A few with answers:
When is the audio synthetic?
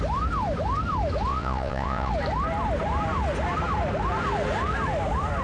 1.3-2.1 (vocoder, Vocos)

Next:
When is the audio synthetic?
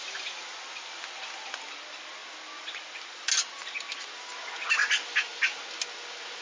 none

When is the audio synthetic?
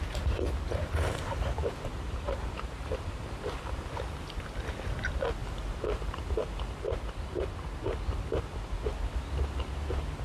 1.9-3.6 (vocoder, BigVGAN v2)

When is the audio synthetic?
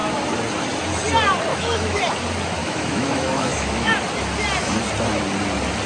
1.5-2.0 (autoencoder, DAC-VAE); 2.6-3.9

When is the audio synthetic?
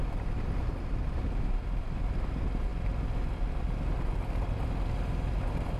0.0-0.8 (vocoder, BigVGAN v2)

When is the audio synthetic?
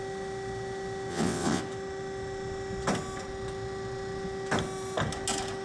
1.1-1.6 (vocoder, WaveNeXt)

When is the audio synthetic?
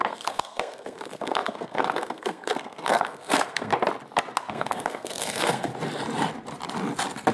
0.0-3.7 (codec, SNAC); 4.4-5.7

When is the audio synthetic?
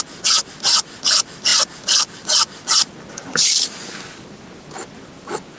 none